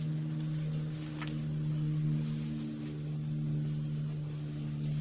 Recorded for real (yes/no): yes